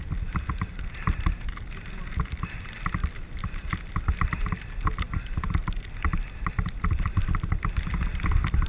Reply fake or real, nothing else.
real